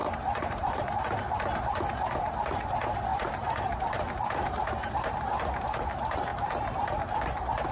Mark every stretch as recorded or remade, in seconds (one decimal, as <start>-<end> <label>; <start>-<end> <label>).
0.0-0.9 remade; 0.9-3.1 recorded; 3.1-5.6 remade; 5.6-7.7 recorded

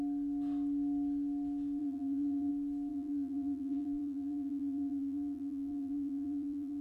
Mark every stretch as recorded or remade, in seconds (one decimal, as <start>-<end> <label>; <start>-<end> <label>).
0.0-1.8 recorded; 1.8-2.5 remade; 2.5-2.9 recorded; 2.9-6.8 remade

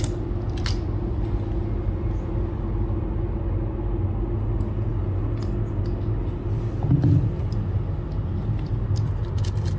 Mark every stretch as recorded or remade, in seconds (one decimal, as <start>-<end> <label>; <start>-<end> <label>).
0.0-9.8 recorded

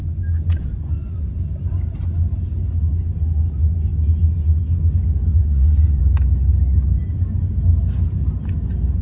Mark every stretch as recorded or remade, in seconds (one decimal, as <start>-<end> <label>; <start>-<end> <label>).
0.0-0.6 recorded; 0.6-1.2 remade; 1.2-5.3 recorded; 5.3-6.0 remade; 6.0-9.0 recorded